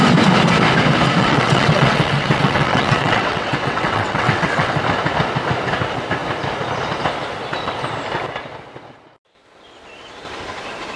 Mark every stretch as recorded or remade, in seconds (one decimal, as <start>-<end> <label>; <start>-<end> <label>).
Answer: 0.0-1.2 recorded; 1.2-4.8 remade; 4.8-11.0 recorded

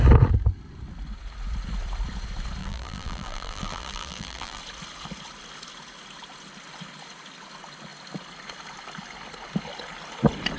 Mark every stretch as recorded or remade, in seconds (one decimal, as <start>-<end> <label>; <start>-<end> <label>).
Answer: 0.0-2.6 recorded; 2.6-4.6 remade; 4.6-10.6 recorded